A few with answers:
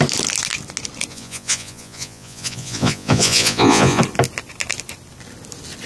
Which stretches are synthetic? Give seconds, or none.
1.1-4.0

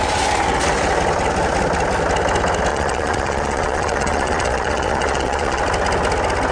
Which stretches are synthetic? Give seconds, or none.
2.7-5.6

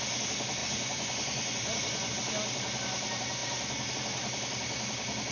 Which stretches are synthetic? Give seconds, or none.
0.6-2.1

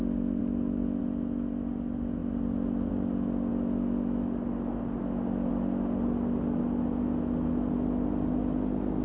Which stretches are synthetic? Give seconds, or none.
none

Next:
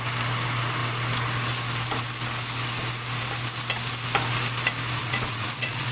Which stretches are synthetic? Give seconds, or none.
5.0-5.9

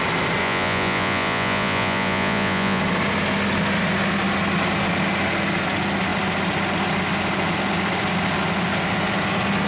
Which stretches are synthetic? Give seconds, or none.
0.4-2.8

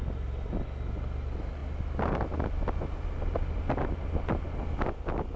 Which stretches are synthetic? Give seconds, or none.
none